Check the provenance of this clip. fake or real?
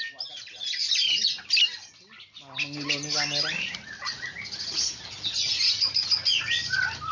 real